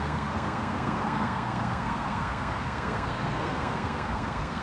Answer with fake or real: fake